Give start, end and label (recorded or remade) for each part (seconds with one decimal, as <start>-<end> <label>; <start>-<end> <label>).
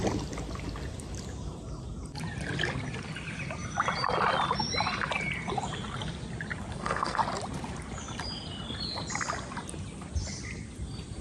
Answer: 0.0-6.7 recorded; 6.7-7.2 remade; 7.2-11.2 recorded